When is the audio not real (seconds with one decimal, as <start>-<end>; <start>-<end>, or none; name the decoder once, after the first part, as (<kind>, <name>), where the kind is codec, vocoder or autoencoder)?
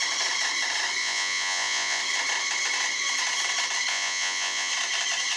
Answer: 1.0-2.0 (vocoder, Vocos); 3.9-4.7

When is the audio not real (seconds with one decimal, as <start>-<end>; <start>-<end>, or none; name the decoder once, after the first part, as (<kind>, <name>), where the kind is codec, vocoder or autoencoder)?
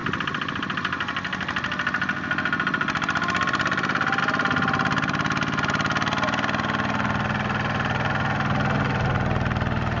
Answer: none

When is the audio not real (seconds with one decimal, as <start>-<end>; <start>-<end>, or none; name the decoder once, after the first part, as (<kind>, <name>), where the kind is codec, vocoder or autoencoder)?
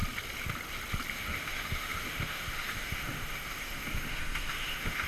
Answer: 1.1-5.1 (autoencoder, DAC-VAE)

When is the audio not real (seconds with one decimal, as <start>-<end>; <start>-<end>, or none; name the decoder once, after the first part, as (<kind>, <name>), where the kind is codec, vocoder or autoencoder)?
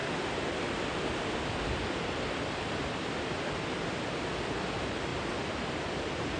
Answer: none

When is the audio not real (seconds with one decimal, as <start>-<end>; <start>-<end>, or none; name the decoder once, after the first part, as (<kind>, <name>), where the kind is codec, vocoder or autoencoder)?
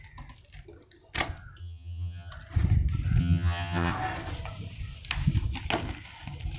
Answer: 1.6-2.3 (vocoder, HiFi-GAN); 3.2-3.9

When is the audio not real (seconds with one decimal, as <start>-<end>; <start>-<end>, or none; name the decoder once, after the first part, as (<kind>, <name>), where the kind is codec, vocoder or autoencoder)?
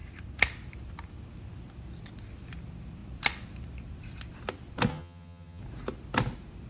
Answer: 4.9-5.6 (vocoder, HiFi-GAN)